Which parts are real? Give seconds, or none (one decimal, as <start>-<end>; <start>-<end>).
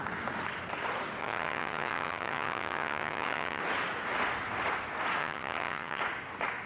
0.0-1.2; 3.6-5.2; 6.0-6.7